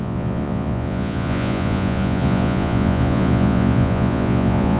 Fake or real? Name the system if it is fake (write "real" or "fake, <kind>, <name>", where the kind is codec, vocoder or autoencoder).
fake, vocoder, Vocos